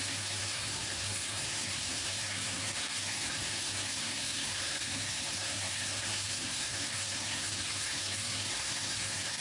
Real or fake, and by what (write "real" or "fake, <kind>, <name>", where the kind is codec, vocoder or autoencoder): fake, codec, SNAC